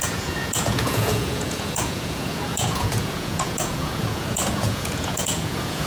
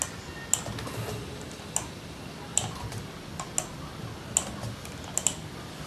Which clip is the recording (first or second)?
second